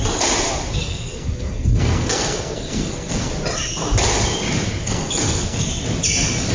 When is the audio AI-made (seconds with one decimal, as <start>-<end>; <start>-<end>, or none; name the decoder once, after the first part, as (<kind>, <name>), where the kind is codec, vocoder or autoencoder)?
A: 0.8-3.3 (codec, SNAC); 4.8-5.7